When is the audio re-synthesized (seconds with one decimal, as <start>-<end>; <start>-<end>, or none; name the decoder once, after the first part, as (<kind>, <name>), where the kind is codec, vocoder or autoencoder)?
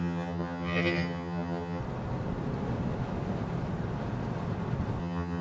0.0-1.8 (vocoder, HiFi-GAN); 5.0-5.4